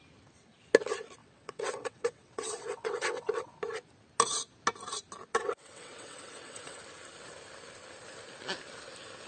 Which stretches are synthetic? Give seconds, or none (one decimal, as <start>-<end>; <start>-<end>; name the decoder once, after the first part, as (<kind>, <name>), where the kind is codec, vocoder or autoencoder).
1.2-3.5 (vocoder, WaveNeXt); 5.3-6.8